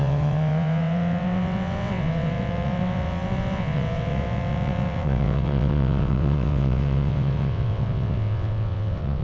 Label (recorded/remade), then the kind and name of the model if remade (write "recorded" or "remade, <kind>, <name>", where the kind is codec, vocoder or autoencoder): remade, vocoder, WaveNeXt